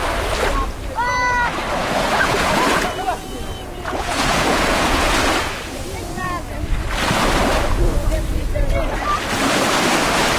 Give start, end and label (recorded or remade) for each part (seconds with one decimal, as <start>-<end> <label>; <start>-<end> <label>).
0.0-1.8 recorded; 1.8-5.4 remade; 5.4-10.4 recorded